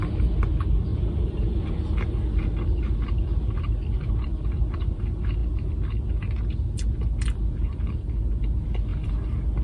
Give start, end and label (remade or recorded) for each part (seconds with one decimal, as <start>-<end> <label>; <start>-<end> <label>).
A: 0.0-0.9 recorded; 0.9-1.7 remade; 1.7-9.6 recorded